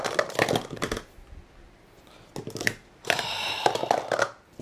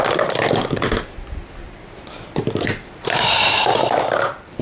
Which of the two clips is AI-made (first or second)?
second